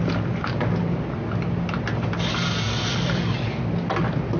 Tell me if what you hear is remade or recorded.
recorded